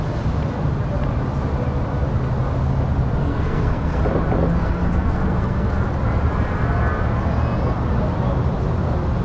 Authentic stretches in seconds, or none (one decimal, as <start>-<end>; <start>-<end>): 0.0-3.2; 4.0-4.6; 5.7-9.2